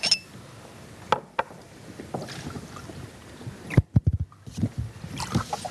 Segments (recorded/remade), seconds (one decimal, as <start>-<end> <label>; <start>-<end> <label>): 0.0-5.7 recorded